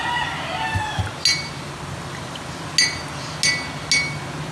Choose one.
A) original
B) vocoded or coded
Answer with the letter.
A